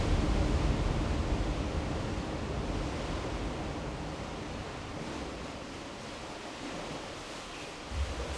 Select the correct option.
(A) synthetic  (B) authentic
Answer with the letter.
A